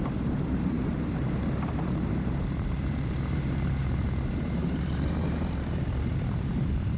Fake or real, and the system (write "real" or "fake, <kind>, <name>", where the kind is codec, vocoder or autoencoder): fake, vocoder, BigVGAN v2